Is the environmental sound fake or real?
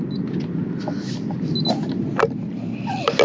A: real